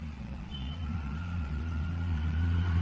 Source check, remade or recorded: remade